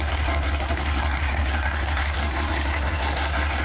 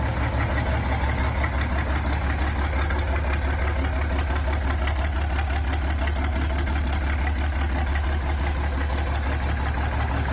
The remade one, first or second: first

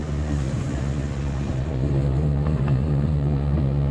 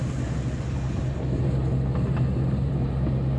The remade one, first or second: first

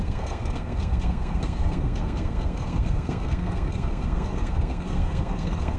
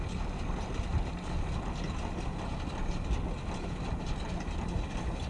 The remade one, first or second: first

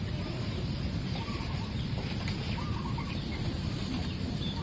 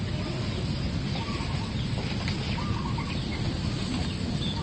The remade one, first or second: first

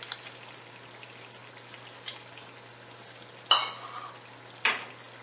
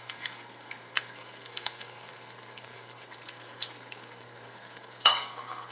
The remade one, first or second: second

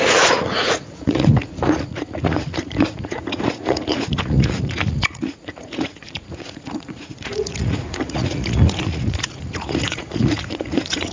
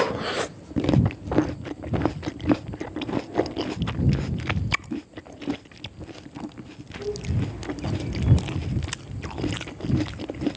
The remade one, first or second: first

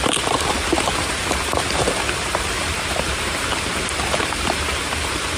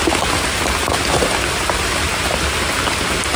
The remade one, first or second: first